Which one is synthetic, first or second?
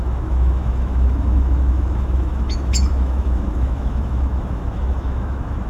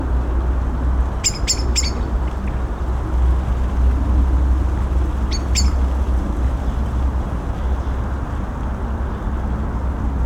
first